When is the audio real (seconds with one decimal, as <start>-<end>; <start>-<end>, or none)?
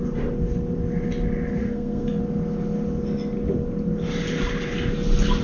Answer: 0.0-1.6; 2.2-5.4